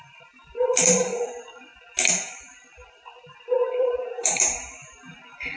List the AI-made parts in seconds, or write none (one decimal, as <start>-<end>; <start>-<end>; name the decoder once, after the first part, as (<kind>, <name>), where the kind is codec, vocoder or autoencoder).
0.0-1.7 (vocoder, BigVGAN v2); 2.3-5.6